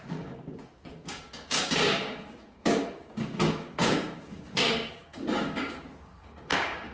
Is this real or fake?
fake